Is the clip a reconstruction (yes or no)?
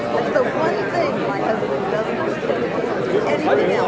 no